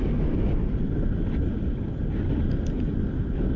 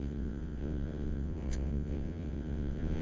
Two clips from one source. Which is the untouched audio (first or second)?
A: first